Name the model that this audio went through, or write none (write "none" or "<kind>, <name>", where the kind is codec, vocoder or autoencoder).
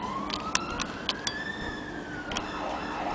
none